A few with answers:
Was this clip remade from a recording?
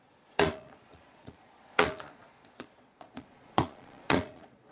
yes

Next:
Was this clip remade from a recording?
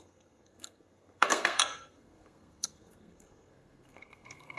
yes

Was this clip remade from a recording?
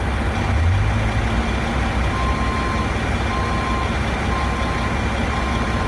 no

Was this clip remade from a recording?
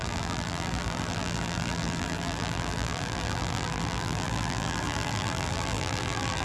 yes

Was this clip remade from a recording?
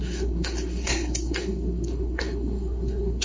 yes